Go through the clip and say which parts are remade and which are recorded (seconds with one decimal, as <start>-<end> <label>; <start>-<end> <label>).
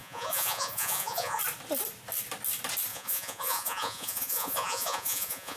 0.0-1.4 remade; 1.4-2.9 recorded; 2.9-5.6 remade